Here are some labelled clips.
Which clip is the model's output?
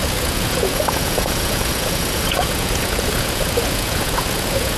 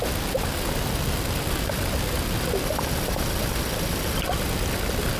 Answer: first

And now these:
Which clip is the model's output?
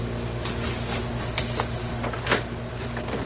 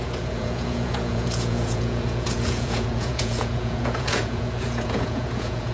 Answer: second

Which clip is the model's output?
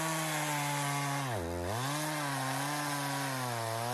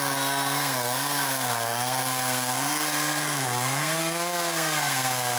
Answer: second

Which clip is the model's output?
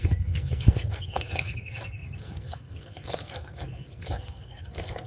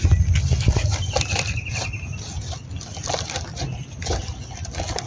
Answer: first